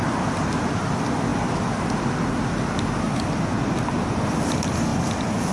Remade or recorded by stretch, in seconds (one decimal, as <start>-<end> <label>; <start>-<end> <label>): 0.0-5.5 recorded